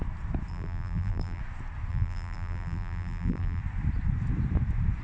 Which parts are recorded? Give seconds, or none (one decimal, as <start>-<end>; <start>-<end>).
0.0-0.5; 1.4-1.9; 3.6-5.0

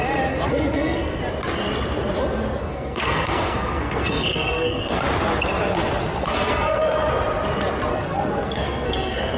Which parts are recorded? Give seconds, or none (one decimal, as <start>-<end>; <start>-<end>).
0.0-0.5; 1.2-2.6; 5.0-6.2; 7.1-7.9

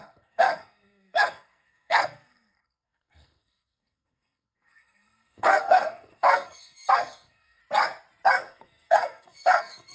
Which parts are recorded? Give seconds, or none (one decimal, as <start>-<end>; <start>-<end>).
7.6-8.3

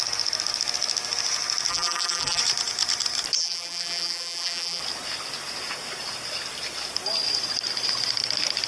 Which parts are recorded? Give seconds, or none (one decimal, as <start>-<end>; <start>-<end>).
0.0-1.7; 2.4-3.4; 4.8-8.7

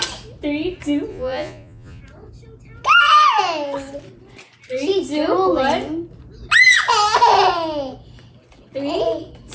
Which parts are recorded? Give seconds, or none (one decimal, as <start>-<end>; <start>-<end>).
0.0-1.1; 2.0-9.5

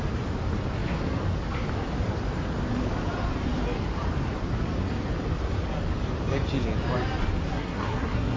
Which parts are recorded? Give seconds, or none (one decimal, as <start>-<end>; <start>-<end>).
0.0-7.5

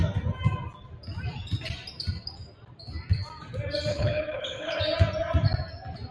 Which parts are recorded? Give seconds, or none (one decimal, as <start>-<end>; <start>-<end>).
0.0-3.9; 4.8-6.1

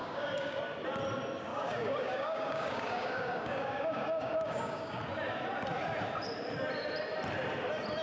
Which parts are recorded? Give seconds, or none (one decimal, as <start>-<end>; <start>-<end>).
0.6-1.5; 5.0-8.0